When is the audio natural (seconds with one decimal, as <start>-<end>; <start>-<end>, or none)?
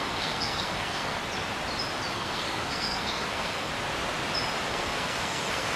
1.2-2.1; 3.7-4.7